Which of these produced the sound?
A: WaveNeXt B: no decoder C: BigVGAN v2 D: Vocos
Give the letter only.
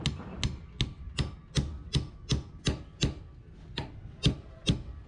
B